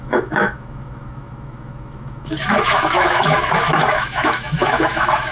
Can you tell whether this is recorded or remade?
remade